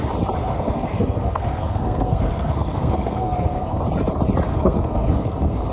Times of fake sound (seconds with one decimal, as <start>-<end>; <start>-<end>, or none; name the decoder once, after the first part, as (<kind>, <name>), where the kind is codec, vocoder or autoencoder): 0.4-3.8 (codec, SNAC); 4.5-5.7